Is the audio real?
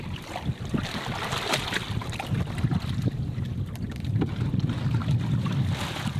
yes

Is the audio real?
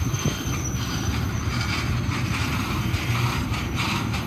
no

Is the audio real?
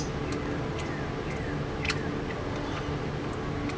yes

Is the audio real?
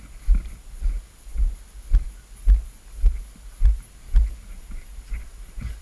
yes